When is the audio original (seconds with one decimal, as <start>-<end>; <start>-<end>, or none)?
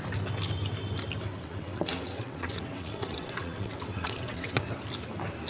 0.0-1.3; 4.6-5.5